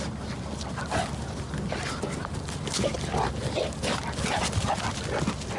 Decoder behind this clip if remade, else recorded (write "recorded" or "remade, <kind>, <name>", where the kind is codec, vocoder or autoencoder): recorded